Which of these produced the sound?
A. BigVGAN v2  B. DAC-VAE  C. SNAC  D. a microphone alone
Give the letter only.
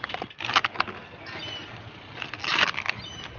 D